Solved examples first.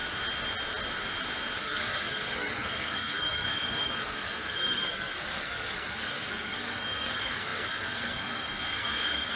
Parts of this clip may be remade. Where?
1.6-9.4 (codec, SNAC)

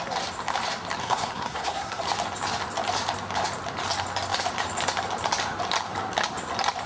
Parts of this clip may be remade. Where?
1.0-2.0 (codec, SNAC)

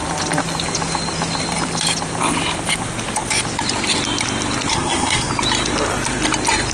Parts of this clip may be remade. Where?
4.7-5.3 (codec, SNAC)

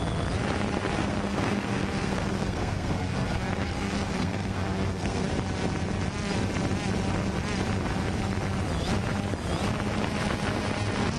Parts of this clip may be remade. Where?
1.0-5.3 (codec, SNAC)

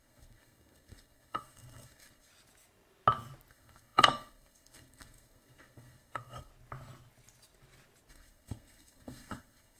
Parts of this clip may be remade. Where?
0.0-2.3 (codec, SNAC); 3.5-6.5; 8.1-9.8